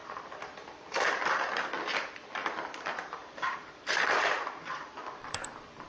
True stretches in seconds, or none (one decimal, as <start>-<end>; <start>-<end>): 1.1-2.4